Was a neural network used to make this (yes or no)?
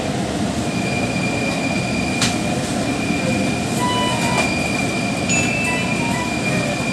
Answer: no